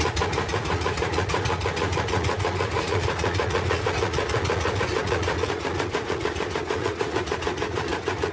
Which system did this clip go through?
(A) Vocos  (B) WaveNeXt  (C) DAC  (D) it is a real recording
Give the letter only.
A